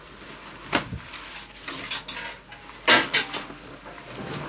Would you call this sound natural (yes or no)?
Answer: yes